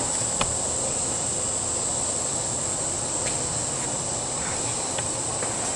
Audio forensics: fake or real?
real